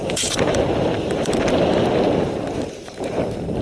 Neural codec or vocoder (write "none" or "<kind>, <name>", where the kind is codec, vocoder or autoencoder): vocoder, BigVGAN v2